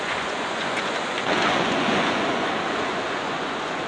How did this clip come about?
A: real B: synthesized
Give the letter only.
B